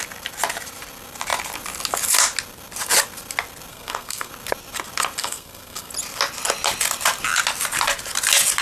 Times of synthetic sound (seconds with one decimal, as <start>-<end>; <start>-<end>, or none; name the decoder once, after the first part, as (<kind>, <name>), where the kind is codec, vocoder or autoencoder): 3.7-4.3 (codec, SNAC); 5.2-5.9

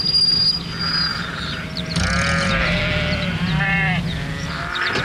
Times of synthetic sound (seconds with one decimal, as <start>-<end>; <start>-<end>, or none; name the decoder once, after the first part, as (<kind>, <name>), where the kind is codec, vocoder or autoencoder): 1.1-2.8 (vocoder, BigVGAN v2); 3.3-5.0

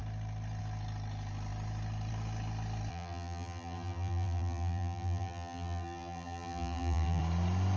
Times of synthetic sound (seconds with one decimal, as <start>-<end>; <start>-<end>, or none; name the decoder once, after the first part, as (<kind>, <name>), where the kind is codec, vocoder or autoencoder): 2.9-7.2 (vocoder, BigVGAN v2)

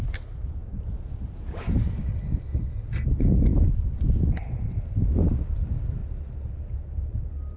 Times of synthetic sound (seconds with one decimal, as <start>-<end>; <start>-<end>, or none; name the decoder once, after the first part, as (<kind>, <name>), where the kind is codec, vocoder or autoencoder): 6.0-6.6 (vocoder, BigVGAN v2)